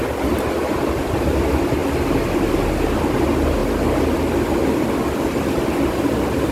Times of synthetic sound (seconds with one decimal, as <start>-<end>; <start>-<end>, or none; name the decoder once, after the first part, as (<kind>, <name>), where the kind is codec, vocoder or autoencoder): none